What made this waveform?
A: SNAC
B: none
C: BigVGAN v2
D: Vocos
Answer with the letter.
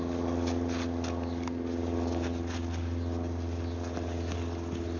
B